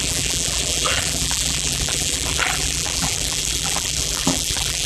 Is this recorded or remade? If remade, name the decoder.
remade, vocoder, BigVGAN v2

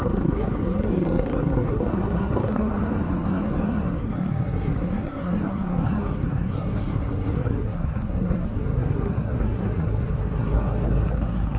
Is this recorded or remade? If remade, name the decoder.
remade, codec, SNAC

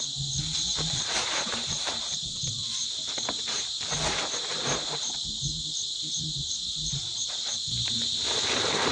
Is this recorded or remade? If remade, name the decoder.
remade, vocoder, BigVGAN v2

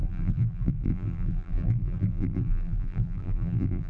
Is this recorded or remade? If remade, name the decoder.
remade, vocoder, BigVGAN v2